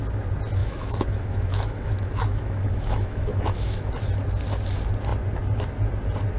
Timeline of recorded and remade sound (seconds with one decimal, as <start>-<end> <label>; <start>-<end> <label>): 0.0-0.6 recorded; 0.6-3.9 remade; 3.9-6.4 recorded

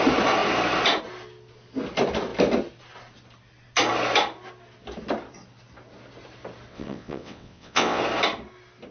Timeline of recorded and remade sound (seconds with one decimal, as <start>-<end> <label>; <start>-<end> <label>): 0.0-6.7 recorded; 6.7-8.0 remade; 8.0-8.9 recorded

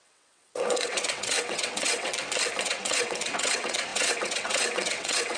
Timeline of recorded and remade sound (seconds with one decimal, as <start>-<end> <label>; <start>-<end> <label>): 0.0-2.1 remade; 2.1-2.6 recorded; 2.6-5.4 remade

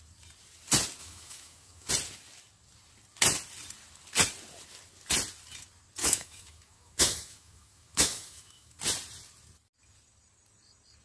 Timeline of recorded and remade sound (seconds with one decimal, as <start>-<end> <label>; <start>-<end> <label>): 0.0-1.0 recorded; 1.0-1.9 remade; 1.9-6.0 recorded; 6.0-8.8 remade; 8.8-11.0 recorded

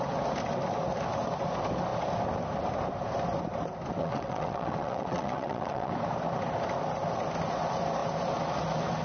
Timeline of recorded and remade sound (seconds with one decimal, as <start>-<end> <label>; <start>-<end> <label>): 0.0-4.0 recorded; 4.0-5.9 remade; 5.9-9.0 recorded

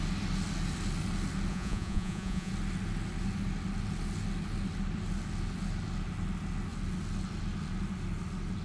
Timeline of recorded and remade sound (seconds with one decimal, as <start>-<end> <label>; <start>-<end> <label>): 0.0-1.5 recorded; 1.5-2.5 remade; 2.5-8.6 recorded

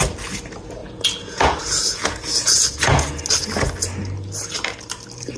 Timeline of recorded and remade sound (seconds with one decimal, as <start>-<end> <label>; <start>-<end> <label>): 0.0-0.8 recorded; 0.8-3.2 remade; 3.2-5.4 recorded